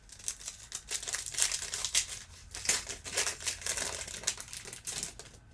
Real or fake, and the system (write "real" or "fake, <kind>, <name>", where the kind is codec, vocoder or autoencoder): real